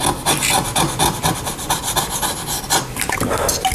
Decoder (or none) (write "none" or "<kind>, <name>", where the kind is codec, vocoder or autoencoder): none